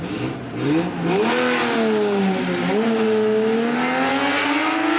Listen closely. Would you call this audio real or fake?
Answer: real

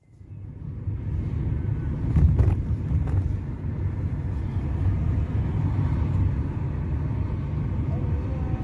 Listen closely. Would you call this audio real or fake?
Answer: real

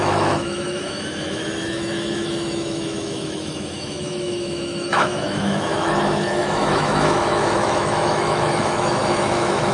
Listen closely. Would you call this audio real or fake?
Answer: fake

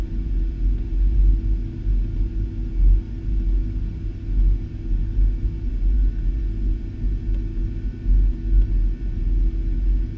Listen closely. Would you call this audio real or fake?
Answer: real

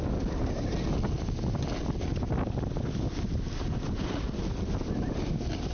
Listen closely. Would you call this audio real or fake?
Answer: real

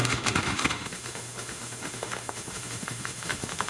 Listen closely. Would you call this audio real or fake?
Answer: fake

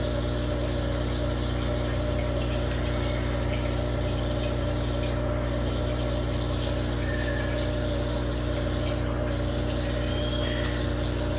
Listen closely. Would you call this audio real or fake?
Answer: real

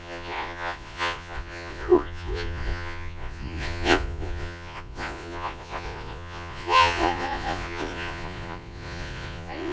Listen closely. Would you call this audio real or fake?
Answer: fake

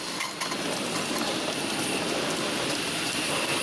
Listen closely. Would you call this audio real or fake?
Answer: real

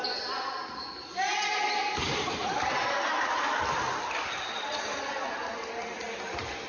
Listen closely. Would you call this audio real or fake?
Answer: real